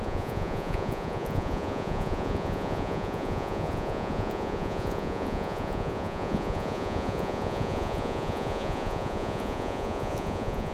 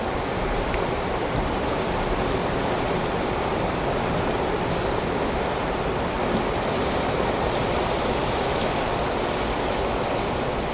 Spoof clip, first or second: first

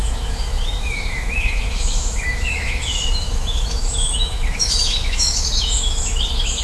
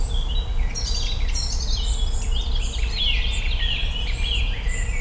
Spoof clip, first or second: first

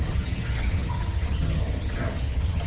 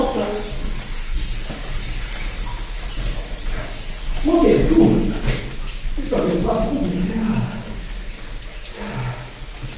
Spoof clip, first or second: first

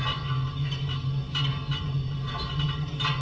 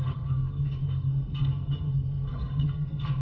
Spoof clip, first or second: second